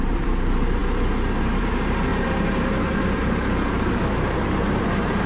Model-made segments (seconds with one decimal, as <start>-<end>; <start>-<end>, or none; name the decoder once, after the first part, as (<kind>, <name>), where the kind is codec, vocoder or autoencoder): 0.0-0.8 (vocoder, BigVGAN v2); 1.4-5.3